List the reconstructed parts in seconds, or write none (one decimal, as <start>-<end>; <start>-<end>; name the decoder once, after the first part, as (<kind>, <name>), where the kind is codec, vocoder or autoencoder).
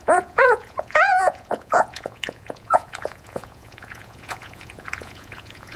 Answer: 0.0-5.8 (vocoder, Vocos)